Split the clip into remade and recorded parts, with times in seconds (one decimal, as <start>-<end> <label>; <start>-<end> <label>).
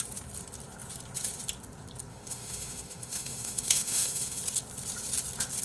0.0-2.1 recorded; 2.1-4.4 remade; 4.4-5.6 recorded